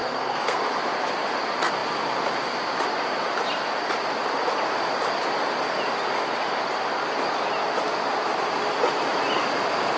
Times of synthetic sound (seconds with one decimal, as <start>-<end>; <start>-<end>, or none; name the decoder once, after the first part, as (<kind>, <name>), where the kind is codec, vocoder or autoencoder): 0.0-0.6 (codec, SNAC)